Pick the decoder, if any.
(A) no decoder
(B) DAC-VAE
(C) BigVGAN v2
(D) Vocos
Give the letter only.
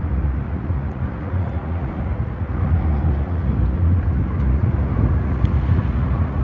D